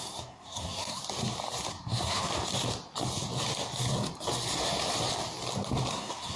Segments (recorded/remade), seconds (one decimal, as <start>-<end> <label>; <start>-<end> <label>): 0.0-1.0 remade; 1.0-1.7 recorded; 1.7-2.3 remade; 2.3-5.9 recorded; 5.9-6.4 remade